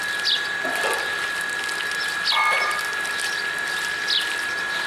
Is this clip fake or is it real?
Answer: real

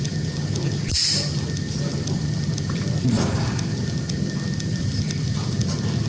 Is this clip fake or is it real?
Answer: fake